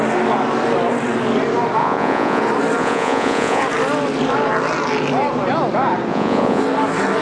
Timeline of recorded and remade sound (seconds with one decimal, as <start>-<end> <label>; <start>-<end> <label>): 0.0-1.8 recorded; 1.8-2.4 remade; 2.4-2.8 recorded; 2.8-3.6 remade; 3.6-6.1 recorded; 6.1-6.6 remade; 6.6-7.2 recorded